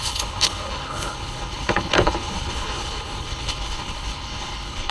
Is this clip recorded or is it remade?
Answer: remade